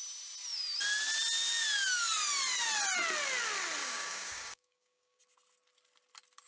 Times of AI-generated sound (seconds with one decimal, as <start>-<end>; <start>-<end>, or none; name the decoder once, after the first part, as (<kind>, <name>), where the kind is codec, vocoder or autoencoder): 3.8-5.2 (codec, DAC)